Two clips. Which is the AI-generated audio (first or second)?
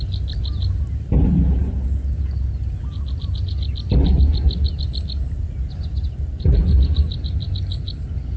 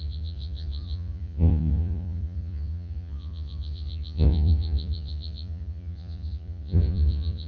second